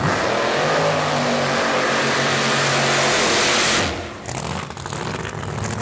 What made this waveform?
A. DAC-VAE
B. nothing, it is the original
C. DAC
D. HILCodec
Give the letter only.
B